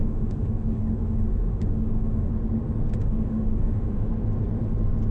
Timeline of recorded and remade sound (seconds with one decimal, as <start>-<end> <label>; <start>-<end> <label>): 0.0-2.3 remade; 2.3-3.0 recorded; 3.0-4.1 remade; 4.1-5.1 recorded

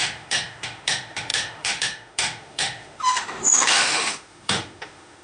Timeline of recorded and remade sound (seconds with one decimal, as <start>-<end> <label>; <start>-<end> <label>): 0.0-5.2 remade

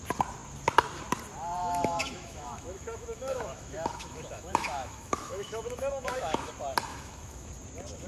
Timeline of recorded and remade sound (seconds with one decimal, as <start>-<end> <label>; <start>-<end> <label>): 0.0-1.6 recorded; 1.6-6.5 remade; 6.5-6.9 recorded; 6.9-7.5 remade; 7.5-8.1 recorded

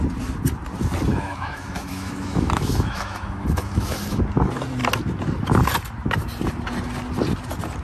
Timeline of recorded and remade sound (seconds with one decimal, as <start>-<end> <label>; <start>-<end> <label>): 0.0-1.1 recorded; 1.1-4.2 remade; 4.2-7.8 recorded